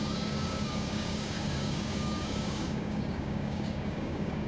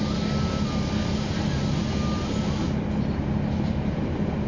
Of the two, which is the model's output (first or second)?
first